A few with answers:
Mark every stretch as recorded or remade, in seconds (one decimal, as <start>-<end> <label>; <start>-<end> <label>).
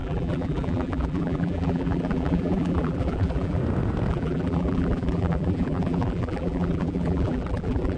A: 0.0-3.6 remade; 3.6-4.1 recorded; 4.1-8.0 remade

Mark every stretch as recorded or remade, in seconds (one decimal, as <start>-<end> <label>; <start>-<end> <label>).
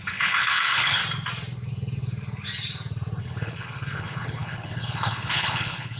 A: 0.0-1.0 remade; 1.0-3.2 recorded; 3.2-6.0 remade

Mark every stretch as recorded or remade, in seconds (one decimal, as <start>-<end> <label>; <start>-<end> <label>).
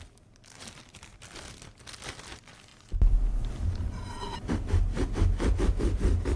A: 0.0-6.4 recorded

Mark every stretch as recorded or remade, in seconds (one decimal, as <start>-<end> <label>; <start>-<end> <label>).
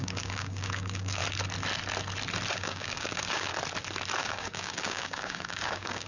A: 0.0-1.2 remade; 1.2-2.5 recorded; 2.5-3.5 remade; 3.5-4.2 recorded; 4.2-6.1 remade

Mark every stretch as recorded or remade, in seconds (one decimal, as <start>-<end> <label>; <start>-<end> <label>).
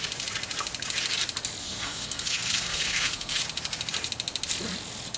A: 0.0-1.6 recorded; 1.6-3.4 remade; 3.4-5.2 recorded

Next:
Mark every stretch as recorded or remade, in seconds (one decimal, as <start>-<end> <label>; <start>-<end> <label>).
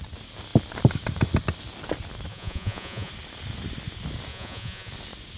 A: 0.0-2.3 recorded; 2.3-3.1 remade; 3.1-4.3 recorded; 4.3-4.9 remade; 4.9-5.4 recorded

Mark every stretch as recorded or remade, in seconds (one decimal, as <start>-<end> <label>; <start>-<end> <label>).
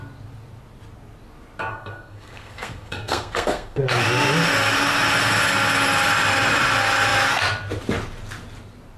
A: 0.0-1.7 recorded; 1.7-3.8 remade; 3.8-9.0 recorded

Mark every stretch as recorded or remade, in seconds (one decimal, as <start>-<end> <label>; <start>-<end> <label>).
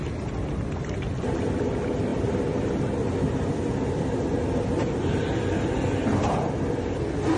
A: 0.0-7.4 recorded